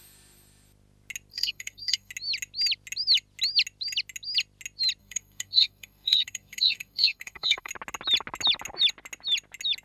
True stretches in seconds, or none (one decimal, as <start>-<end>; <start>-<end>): 0.0-1.3; 2.1-5.0; 7.7-9.8